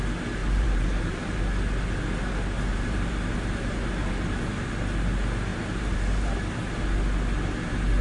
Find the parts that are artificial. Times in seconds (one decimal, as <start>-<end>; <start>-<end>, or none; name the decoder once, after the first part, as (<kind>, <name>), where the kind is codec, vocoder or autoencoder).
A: 0.4-1.4 (vocoder, BigVGAN v2); 2.7-4.7; 5.5-6.5

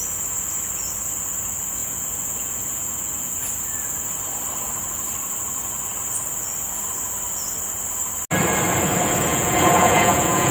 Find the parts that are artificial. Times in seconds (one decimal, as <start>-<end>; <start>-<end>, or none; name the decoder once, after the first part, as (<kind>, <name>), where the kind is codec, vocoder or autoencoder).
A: 1.8-3.3 (vocoder, Vocos); 9.3-10.5

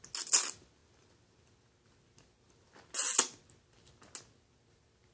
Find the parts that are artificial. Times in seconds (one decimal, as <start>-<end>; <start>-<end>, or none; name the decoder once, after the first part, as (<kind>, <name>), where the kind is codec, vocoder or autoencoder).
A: none